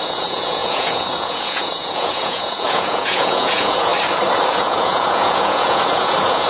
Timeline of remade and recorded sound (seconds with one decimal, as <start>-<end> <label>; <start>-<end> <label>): 0.0-3.9 remade; 3.9-4.5 recorded; 4.5-6.5 remade